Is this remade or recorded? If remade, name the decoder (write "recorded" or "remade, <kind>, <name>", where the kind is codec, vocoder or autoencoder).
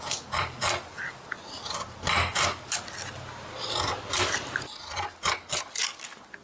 recorded